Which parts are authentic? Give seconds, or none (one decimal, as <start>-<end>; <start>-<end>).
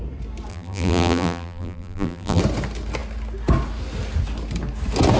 0.0-0.5; 2.4-5.2